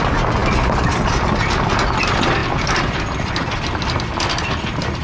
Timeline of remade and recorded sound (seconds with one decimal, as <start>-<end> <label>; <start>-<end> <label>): 0.0-5.0 recorded